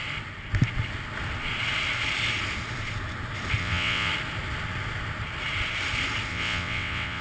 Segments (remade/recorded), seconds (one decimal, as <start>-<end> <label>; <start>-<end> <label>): 0.0-3.6 recorded; 3.6-4.1 remade; 4.1-6.3 recorded; 6.3-7.2 remade